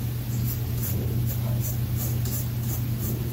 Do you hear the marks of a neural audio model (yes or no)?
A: no